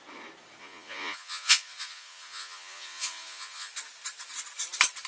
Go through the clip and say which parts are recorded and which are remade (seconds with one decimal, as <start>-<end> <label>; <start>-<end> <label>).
0.0-0.6 recorded; 0.6-3.7 remade; 3.7-5.1 recorded